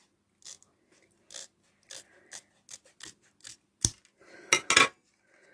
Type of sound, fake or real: real